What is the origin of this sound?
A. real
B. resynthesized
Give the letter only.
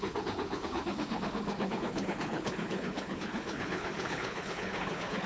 B